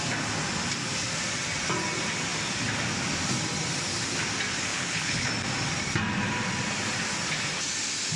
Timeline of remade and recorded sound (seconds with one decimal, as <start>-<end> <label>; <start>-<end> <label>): 0.0-4.7 recorded; 4.7-5.3 remade; 5.3-8.2 recorded